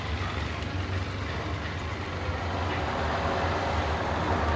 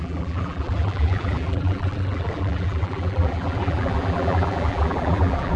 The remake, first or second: second